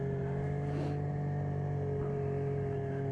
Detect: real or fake real